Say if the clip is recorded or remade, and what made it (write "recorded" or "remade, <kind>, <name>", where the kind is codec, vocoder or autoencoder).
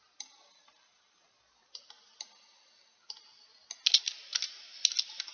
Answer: recorded